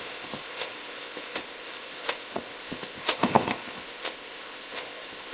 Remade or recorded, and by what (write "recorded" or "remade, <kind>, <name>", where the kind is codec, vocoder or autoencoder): remade, codec, ZipCodec